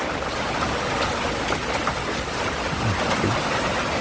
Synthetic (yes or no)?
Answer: no